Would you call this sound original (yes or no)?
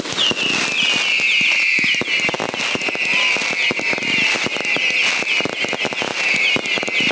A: yes